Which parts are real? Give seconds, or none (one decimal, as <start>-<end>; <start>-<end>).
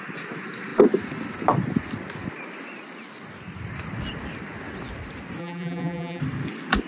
0.0-5.4; 6.2-6.9